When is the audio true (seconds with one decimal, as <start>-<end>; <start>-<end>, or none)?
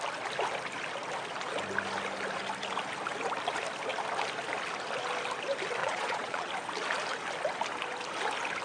0.0-5.8; 6.5-8.6